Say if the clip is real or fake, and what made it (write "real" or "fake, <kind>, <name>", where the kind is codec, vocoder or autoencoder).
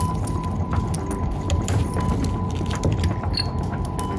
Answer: real